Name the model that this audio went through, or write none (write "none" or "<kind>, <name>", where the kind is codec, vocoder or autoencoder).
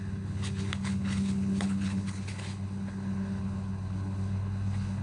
codec, HILCodec